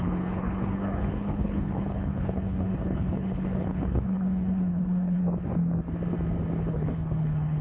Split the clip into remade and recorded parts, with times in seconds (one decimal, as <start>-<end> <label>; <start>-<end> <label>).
0.0-5.2 remade; 5.2-6.7 recorded; 6.7-7.6 remade